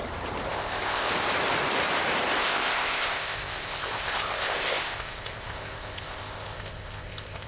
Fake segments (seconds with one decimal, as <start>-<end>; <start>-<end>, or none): 0.5-1.1; 2.4-7.5